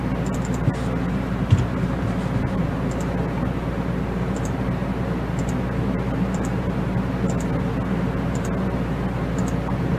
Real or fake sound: real